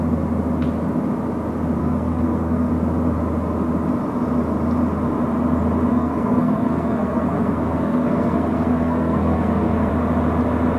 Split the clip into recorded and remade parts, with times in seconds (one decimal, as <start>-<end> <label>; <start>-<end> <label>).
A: 0.0-1.8 recorded; 1.8-2.7 remade; 2.7-5.9 recorded; 5.9-9.9 remade; 9.9-10.8 recorded